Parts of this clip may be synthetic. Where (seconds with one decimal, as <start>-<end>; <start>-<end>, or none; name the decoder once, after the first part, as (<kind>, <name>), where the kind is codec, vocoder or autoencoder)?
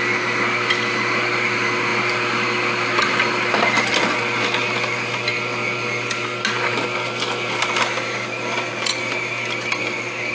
none